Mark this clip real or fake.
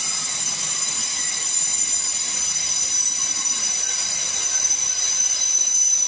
fake